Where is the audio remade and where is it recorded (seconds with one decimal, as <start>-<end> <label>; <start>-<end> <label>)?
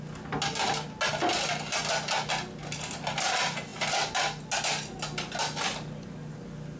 0.0-6.8 recorded